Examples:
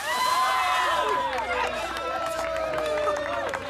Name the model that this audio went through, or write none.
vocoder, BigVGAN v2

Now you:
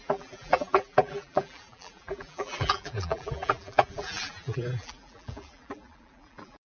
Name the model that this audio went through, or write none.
vocoder, BigVGAN v2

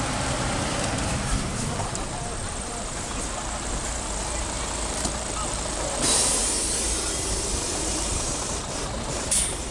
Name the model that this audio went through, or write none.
vocoder, BigVGAN v2